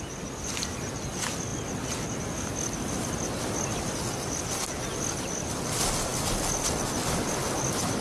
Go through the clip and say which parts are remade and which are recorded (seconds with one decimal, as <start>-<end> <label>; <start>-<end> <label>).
0.0-8.0 recorded